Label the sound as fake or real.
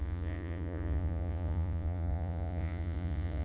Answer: fake